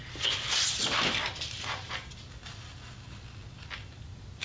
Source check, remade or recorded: recorded